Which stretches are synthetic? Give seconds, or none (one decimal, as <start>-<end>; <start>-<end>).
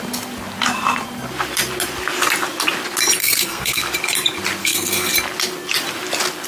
3.2-3.8; 4.6-5.1